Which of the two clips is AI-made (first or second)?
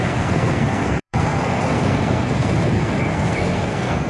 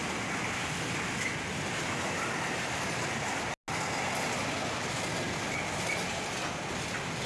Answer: first